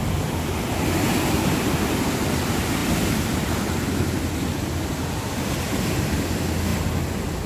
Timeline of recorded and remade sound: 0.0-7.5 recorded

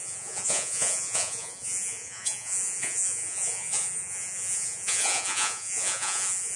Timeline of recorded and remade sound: 0.0-6.6 remade

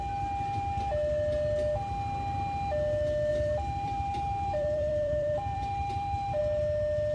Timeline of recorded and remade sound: 0.0-3.3 recorded; 3.3-6.4 remade; 6.4-7.1 recorded

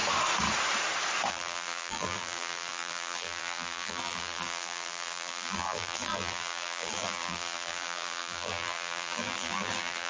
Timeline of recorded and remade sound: 0.0-1.3 recorded; 1.3-10.1 remade